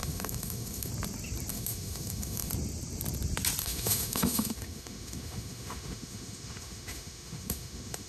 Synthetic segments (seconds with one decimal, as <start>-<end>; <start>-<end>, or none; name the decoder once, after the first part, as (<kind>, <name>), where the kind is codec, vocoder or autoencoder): 0.0-0.9 (autoencoder, DAC-VAE); 1.5-2.5; 3.6-8.1